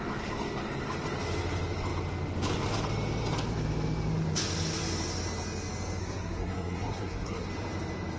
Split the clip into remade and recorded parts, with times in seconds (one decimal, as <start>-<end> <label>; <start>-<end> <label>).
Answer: 0.0-6.0 recorded; 6.0-7.5 remade; 7.5-8.2 recorded